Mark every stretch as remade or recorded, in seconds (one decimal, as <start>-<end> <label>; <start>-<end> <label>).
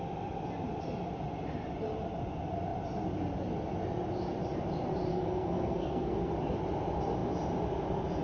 0.0-5.1 recorded; 5.1-6.3 remade; 6.3-8.2 recorded